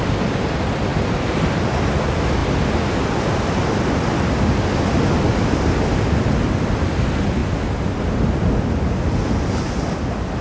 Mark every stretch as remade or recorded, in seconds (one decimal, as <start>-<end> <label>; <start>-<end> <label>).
0.0-10.4 recorded